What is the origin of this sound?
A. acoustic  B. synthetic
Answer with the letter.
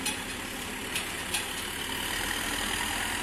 A